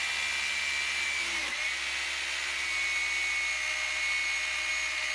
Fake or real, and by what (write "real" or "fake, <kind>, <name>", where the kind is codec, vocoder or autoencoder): real